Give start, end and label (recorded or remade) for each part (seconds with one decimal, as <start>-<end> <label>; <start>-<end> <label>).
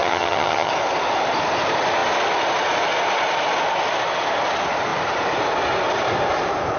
0.0-0.7 remade; 0.7-6.8 recorded